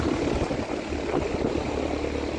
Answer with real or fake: real